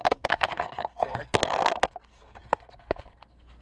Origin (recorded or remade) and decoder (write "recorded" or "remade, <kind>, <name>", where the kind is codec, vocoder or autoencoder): remade, codec, SNAC